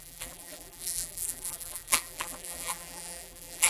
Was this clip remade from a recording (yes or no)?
yes